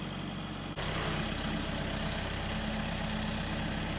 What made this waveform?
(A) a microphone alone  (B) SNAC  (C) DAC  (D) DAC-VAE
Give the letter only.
A